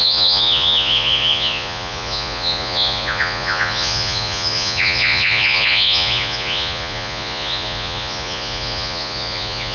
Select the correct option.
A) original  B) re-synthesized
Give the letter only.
B